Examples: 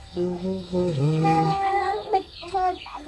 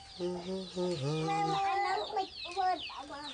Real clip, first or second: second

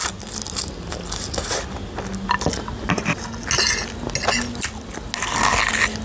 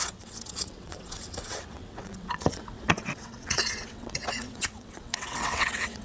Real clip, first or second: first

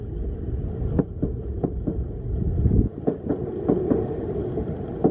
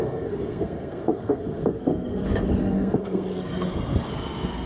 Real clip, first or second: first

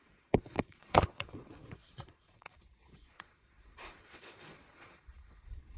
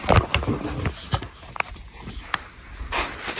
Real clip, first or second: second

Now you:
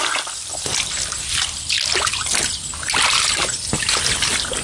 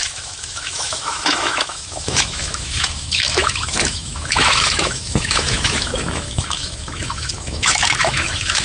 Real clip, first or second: first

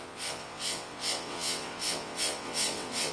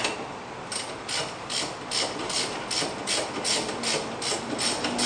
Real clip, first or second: second